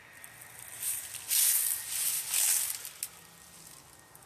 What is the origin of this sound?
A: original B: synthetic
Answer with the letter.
A